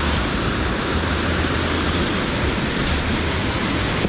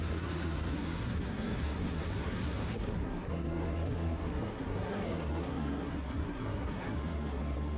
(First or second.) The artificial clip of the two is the second